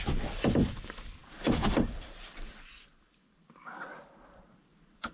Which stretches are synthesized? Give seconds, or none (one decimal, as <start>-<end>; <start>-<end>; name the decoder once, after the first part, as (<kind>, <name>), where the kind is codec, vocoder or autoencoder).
0.0-5.1 (vocoder, BigVGAN v2)